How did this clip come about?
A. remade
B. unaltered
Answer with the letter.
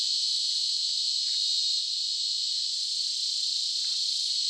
B